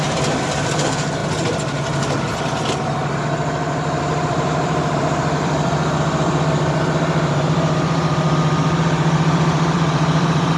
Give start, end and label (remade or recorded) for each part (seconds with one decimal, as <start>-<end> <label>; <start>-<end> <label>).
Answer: 0.0-1.2 remade; 1.2-4.0 recorded; 4.0-10.6 remade